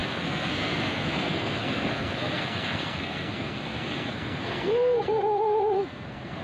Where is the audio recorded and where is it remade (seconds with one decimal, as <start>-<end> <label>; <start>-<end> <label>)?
0.0-6.4 remade